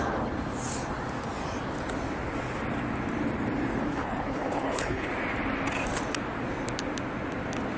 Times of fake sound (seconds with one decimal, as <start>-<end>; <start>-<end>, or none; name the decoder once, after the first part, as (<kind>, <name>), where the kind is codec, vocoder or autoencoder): 3.9-5.1 (codec, HILCodec)